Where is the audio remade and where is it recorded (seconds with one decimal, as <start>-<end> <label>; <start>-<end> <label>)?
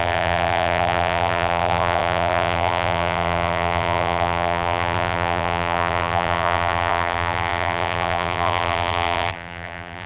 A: 0.0-10.1 remade